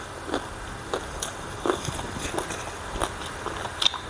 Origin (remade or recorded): recorded